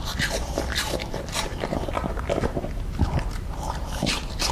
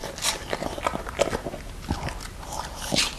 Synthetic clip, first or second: first